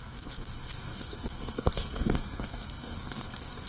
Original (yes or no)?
no